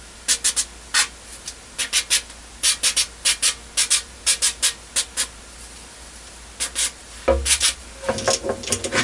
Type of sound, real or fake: real